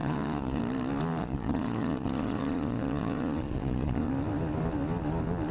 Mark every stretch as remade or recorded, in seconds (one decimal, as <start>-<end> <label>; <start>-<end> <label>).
0.0-0.6 remade; 0.6-1.2 recorded; 1.2-4.1 remade; 4.1-5.5 recorded